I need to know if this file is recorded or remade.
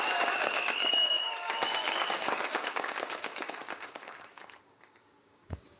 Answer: remade